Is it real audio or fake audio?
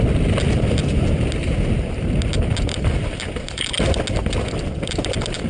real